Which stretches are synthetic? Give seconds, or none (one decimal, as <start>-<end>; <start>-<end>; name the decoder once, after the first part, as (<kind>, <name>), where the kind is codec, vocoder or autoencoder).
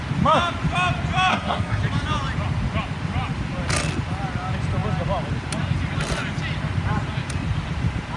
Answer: 1.3-1.8 (codec, SNAC)